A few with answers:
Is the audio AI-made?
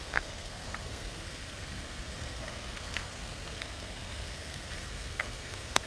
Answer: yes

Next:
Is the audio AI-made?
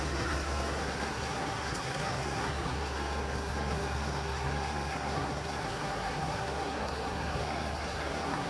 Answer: yes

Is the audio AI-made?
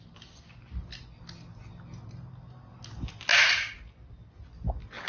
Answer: no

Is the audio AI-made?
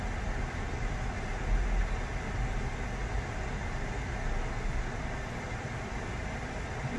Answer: no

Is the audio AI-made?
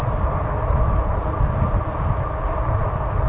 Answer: no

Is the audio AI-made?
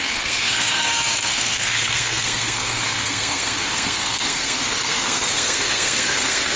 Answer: yes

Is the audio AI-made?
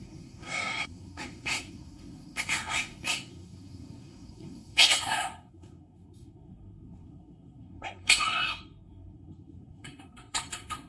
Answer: yes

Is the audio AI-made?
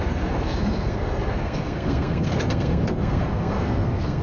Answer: yes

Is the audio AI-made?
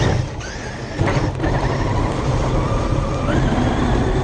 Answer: no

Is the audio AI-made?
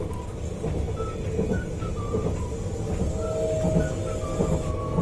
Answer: no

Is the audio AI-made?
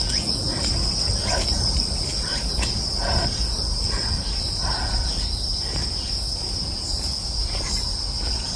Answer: no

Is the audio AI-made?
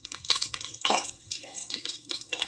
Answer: yes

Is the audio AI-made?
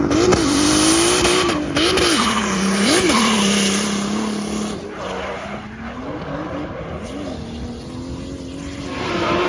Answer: no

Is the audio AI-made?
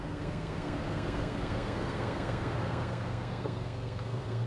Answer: yes